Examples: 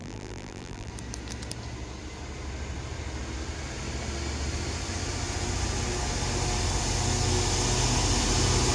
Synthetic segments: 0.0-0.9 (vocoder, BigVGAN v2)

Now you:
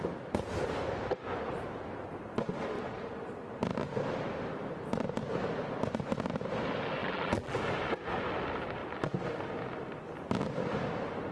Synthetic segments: 7.0-7.6 (vocoder, BigVGAN v2)

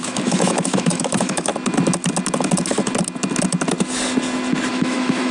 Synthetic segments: 0.0-1.5 (autoencoder, DAC-VAE); 4.7-5.3